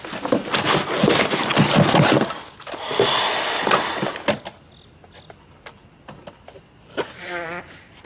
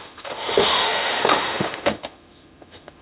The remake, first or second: second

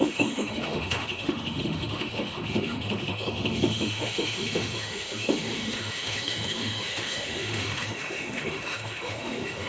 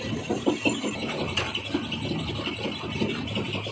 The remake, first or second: first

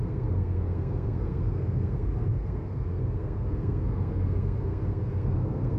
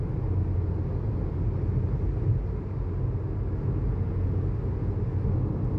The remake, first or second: first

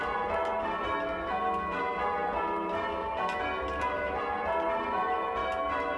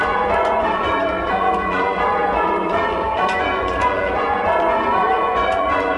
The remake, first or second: second